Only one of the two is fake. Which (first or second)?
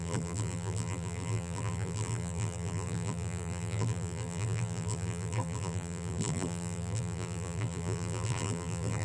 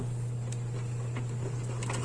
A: first